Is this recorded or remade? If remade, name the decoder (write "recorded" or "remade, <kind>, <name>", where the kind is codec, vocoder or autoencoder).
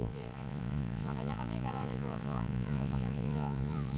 remade, vocoder, Vocos